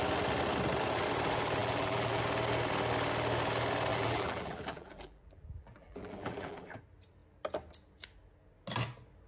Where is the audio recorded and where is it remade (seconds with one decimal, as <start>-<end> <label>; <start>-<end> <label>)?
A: 0.0-1.6 recorded; 1.6-2.2 remade; 2.2-3.9 recorded; 3.9-6.8 remade; 6.8-9.3 recorded